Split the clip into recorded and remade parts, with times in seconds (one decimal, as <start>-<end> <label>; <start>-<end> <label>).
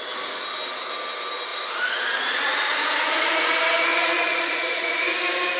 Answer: 0.0-1.5 recorded; 1.5-3.5 remade; 3.5-3.9 recorded; 3.9-5.0 remade; 5.0-5.6 recorded